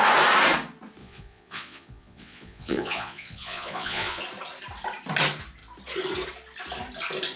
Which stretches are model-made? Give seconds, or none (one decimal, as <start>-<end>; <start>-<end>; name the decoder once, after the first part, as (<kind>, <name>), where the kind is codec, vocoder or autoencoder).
1.0-4.2 (vocoder, Vocos)